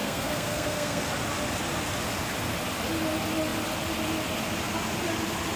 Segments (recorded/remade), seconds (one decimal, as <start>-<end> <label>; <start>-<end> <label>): 0.0-1.1 remade; 1.1-5.6 recorded